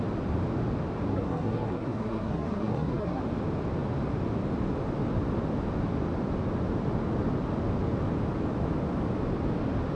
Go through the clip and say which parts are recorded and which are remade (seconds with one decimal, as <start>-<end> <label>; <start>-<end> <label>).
0.0-1.1 recorded; 1.1-3.2 remade; 3.2-10.0 recorded